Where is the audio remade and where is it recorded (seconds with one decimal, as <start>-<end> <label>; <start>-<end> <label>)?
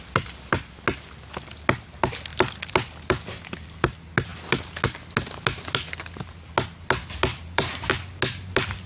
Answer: 0.0-7.3 recorded; 7.3-7.9 remade; 7.9-8.9 recorded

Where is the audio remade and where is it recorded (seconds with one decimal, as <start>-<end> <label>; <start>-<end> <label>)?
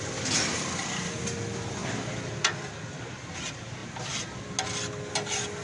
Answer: 0.0-5.6 recorded